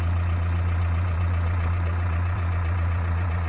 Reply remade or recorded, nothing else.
remade